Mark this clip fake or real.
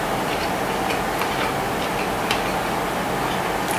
real